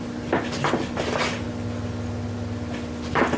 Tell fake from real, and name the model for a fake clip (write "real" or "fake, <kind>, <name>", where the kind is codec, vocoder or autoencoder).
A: real